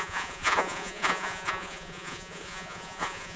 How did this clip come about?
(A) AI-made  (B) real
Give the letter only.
A